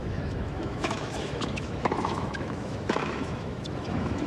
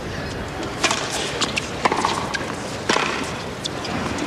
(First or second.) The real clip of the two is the second